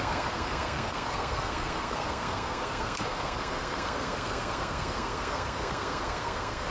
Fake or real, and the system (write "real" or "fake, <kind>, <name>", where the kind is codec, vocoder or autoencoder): fake, codec, SNAC